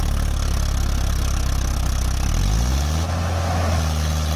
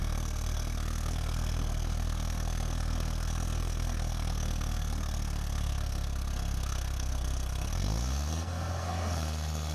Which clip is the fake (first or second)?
second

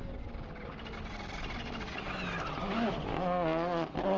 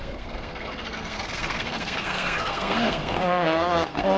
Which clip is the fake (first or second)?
second